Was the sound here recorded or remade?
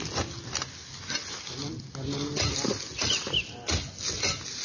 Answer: recorded